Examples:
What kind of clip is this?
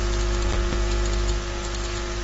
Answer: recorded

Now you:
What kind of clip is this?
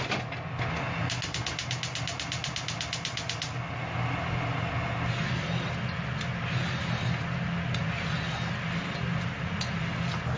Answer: recorded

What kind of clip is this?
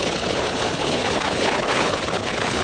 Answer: remade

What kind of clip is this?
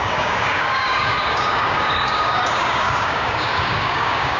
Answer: remade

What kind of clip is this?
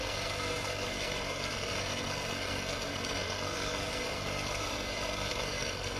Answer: remade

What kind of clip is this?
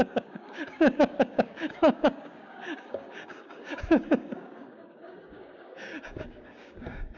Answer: remade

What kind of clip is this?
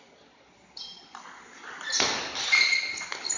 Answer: recorded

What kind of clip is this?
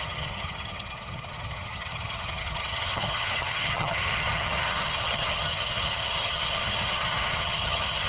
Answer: remade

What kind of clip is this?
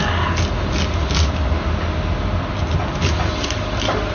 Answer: recorded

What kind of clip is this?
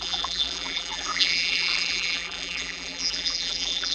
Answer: remade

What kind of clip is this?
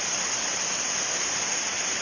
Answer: recorded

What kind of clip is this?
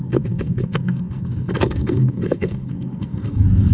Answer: remade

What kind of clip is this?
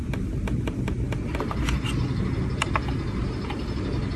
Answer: recorded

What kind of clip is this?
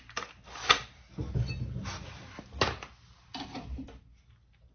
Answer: recorded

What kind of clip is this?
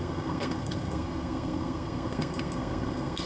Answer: remade